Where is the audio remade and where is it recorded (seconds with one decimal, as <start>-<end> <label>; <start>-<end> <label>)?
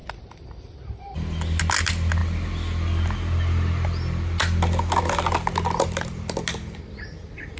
0.0-7.6 recorded